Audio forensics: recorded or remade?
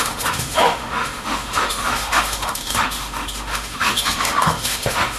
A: remade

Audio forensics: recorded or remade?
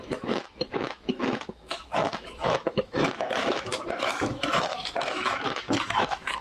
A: remade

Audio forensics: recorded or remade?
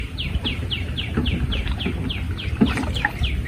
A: recorded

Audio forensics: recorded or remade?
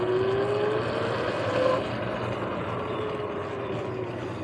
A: recorded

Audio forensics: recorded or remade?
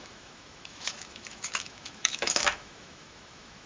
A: remade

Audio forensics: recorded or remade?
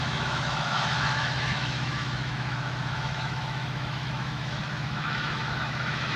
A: remade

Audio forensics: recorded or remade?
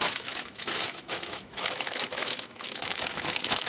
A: remade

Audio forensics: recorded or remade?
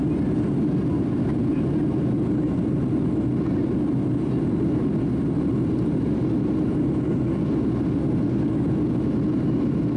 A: recorded